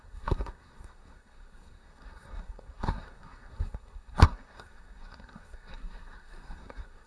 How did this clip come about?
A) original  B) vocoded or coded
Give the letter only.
B